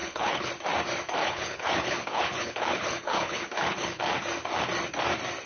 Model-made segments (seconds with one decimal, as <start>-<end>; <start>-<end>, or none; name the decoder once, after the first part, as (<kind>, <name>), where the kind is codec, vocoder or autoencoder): 0.0-0.5 (codec, HILCodec); 1.2-4.0